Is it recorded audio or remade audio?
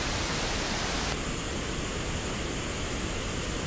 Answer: recorded